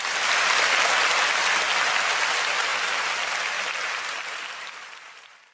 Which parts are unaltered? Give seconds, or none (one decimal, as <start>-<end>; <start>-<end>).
0.0-5.5